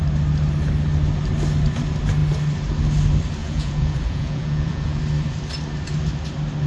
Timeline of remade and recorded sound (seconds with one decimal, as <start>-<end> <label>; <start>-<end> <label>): 0.0-3.4 recorded; 3.4-5.0 remade; 5.0-6.7 recorded